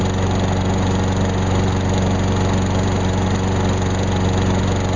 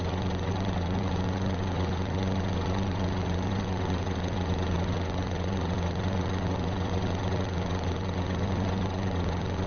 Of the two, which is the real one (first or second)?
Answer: first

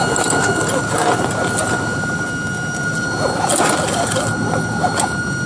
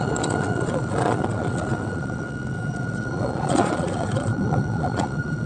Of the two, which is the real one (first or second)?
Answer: first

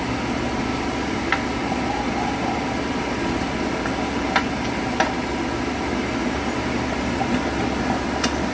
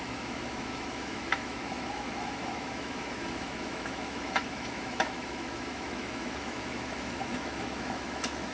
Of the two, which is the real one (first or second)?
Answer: first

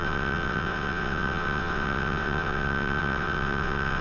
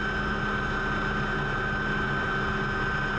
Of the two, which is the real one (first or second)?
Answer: second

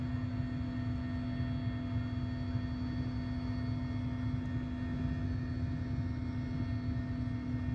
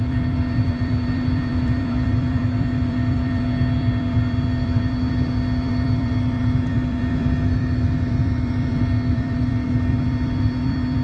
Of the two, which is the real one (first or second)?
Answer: first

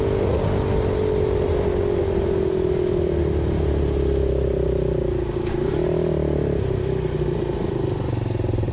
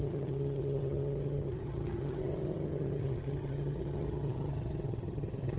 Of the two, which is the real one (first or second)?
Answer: first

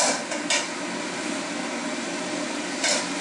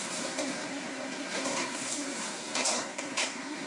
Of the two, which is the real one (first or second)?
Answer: first